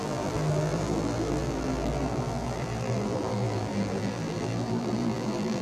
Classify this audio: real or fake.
fake